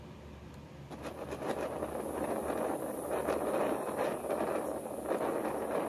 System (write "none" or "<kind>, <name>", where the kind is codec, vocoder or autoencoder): none